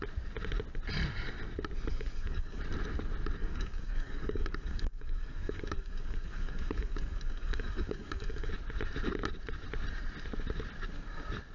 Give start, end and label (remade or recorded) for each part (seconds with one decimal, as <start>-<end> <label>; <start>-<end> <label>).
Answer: 0.0-1.9 recorded; 1.9-2.6 remade; 2.6-3.4 recorded; 3.4-8.5 remade; 8.5-11.5 recorded